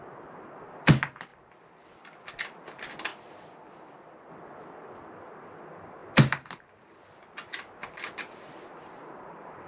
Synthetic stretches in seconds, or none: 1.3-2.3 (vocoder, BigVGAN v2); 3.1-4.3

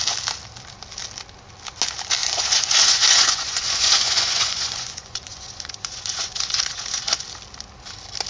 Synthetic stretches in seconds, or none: 2.2-7.2 (vocoder, Vocos)